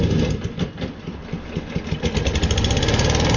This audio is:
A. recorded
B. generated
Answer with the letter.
A